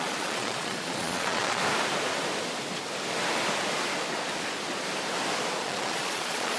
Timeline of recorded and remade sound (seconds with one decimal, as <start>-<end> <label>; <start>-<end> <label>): 0.0-1.6 remade; 1.6-5.6 recorded; 5.6-6.6 remade